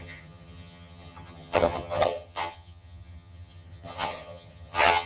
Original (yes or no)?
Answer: no